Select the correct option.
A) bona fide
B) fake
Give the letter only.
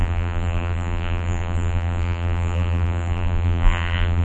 B